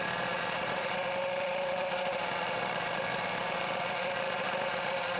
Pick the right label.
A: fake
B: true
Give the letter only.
A